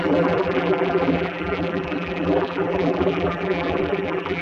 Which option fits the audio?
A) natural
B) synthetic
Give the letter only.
B